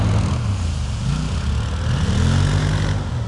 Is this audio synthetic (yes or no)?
no